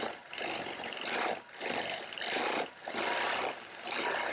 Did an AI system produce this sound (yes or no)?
yes